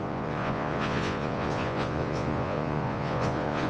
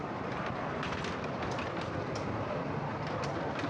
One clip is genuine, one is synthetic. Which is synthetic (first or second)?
first